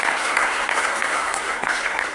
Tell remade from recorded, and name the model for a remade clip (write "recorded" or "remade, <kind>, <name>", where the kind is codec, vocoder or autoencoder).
remade, codec, SNAC